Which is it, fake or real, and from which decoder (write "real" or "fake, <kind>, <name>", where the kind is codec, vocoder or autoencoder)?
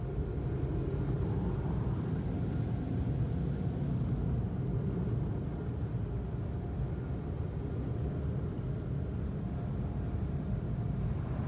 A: real